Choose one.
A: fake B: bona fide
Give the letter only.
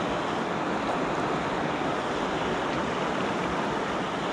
B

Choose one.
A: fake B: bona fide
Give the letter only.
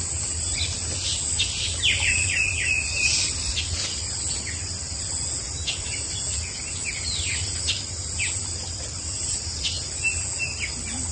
B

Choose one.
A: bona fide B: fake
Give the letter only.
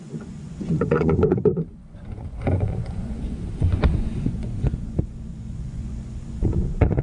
B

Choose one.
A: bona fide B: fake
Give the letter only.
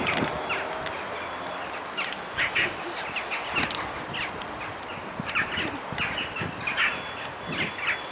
A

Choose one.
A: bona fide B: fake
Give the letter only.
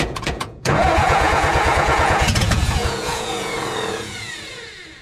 B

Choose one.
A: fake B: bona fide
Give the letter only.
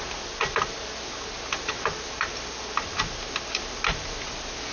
B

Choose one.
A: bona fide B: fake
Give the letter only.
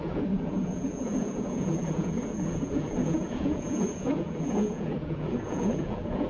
B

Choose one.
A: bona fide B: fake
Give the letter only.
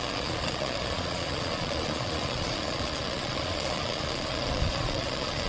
B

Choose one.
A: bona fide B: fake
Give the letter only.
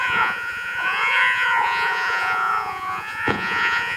B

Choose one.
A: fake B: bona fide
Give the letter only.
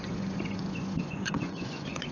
A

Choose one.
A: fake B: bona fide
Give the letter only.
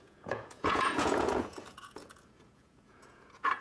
A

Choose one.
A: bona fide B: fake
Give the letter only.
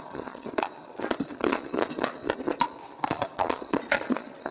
B